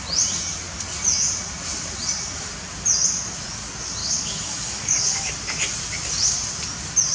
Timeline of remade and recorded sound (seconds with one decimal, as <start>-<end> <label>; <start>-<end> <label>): 0.0-4.0 recorded; 4.0-5.3 remade; 5.3-7.1 recorded

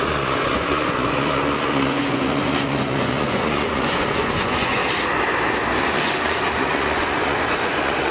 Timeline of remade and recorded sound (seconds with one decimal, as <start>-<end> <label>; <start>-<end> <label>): 0.0-4.8 remade; 4.8-5.8 recorded; 5.8-8.1 remade

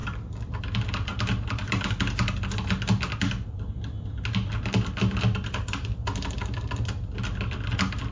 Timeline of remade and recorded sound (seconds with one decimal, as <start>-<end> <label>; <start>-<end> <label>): 0.0-8.1 recorded